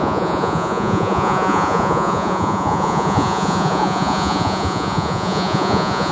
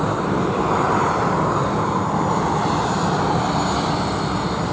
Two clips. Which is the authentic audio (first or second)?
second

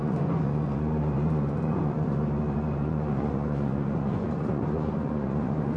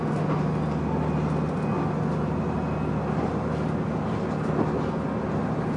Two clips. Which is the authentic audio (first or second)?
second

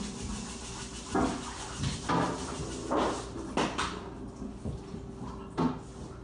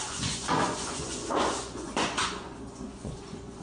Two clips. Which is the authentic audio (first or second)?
first